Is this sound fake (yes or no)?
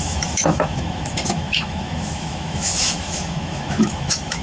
yes